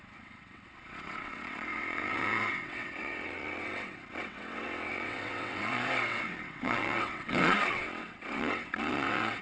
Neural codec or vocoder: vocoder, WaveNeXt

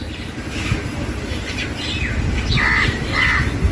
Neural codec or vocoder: none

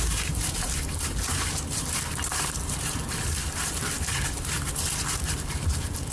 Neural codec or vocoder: vocoder, BigVGAN v2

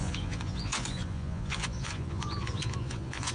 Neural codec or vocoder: vocoder, Vocos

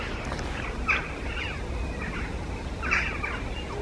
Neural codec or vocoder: none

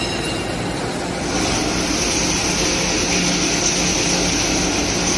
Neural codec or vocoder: none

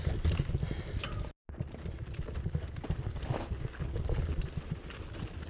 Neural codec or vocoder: none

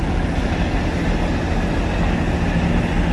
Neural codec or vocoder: none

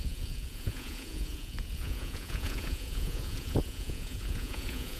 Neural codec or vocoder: vocoder, Vocos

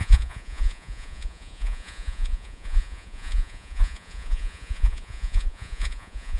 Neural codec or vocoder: vocoder, Vocos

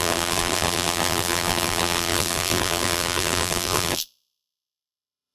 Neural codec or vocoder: vocoder, BigVGAN v2